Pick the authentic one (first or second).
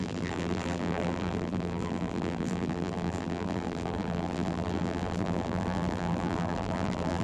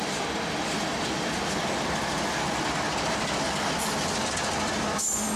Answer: second